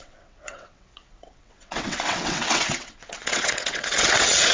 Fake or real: fake